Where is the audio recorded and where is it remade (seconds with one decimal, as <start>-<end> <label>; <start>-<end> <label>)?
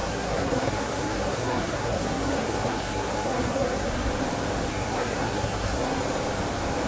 0.0-4.1 remade; 4.1-4.7 recorded; 4.7-6.0 remade; 6.0-6.9 recorded